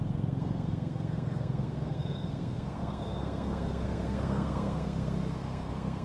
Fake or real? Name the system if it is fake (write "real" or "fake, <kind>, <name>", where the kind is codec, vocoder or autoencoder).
fake, codec, SNAC